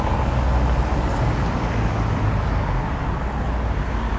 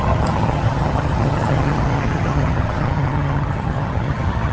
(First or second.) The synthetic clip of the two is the second